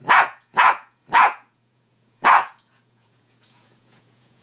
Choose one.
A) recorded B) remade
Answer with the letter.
B